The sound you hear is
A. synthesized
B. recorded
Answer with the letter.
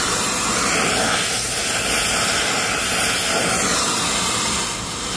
B